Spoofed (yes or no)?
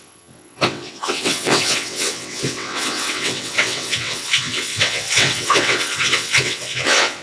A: yes